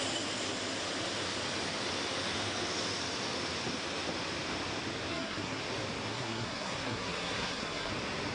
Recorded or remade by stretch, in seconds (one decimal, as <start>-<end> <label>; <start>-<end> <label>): 0.0-5.1 recorded; 5.1-5.6 remade; 5.6-6.1 recorded; 6.1-7.9 remade; 7.9-8.3 recorded